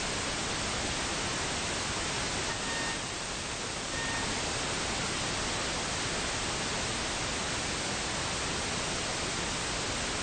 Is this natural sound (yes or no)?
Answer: yes